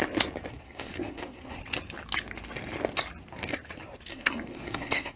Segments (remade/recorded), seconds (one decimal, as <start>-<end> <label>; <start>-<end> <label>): 0.0-0.5 recorded; 0.5-1.6 remade; 1.6-4.1 recorded; 4.1-5.2 remade